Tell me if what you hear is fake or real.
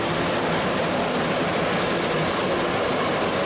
real